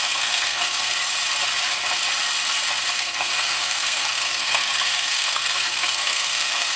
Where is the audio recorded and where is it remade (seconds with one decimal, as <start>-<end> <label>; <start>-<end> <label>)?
0.0-0.9 remade; 0.9-2.9 recorded; 2.9-6.8 remade